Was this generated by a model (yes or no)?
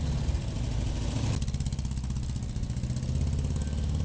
no